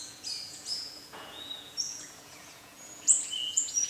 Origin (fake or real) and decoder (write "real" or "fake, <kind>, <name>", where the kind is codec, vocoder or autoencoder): fake, vocoder, Vocos